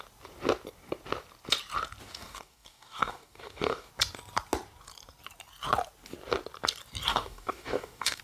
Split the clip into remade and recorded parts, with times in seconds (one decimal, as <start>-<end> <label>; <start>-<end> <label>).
0.0-2.1 recorded; 2.1-3.9 remade; 3.9-7.1 recorded; 7.1-8.2 remade